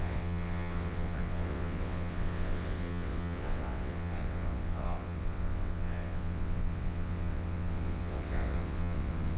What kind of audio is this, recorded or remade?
remade